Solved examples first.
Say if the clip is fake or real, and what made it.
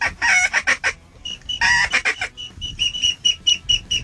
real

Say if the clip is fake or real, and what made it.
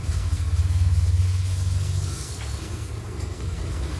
fake, codec, SNAC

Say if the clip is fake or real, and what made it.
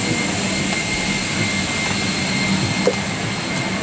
real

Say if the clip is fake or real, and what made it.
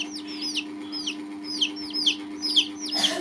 real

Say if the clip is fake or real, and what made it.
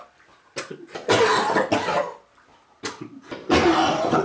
real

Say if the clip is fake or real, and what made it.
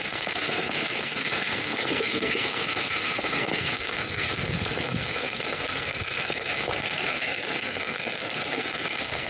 fake, codec, SNAC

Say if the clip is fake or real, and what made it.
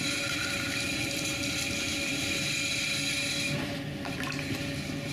real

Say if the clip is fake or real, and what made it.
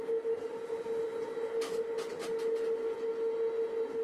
real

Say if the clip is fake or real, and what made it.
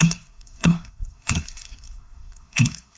fake, codec, SNAC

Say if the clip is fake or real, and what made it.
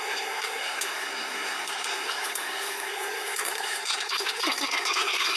fake, codec, SNAC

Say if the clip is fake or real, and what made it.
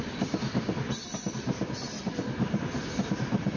real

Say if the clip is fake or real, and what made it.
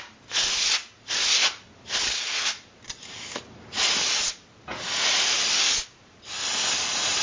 real